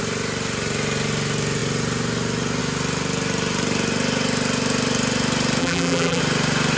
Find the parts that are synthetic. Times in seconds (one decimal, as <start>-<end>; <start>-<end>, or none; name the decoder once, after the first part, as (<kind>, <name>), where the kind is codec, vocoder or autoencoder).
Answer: 5.6-6.2 (vocoder, BigVGAN v2)

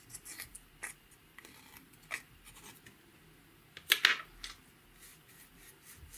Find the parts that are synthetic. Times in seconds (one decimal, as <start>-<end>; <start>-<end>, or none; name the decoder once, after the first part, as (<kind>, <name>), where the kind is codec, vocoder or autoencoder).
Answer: 0.5-2.3 (vocoder, BigVGAN v2); 5.1-5.7

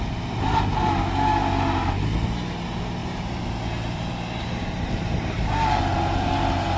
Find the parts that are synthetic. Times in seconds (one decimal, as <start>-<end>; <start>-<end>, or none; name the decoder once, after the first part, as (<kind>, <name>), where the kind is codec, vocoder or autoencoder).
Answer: 3.0-5.8 (vocoder, BigVGAN v2)

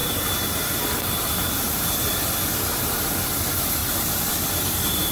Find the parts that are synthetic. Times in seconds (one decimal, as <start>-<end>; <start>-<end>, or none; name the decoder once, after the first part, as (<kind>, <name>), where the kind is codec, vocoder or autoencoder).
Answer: 0.0-3.1 (vocoder, BigVGAN v2); 3.8-5.1

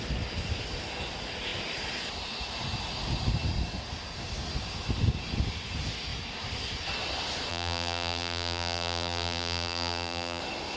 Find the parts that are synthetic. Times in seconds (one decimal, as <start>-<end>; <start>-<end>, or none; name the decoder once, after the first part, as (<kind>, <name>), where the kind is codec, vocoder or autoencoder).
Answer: 7.5-10.4 (vocoder, BigVGAN v2)

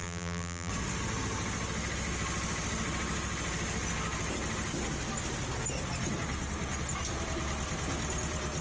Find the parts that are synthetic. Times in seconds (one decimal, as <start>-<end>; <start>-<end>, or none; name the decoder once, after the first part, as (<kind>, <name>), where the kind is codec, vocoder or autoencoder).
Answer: 0.0-0.7 (vocoder, BigVGAN v2)

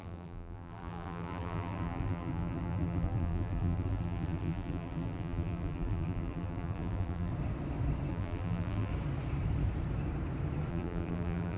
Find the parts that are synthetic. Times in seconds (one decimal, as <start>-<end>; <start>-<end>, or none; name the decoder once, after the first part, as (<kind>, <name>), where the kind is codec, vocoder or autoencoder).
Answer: 0.0-7.3 (vocoder, BigVGAN v2); 8.1-8.9; 10.7-11.6